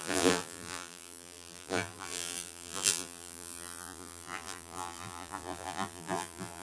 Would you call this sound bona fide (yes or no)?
no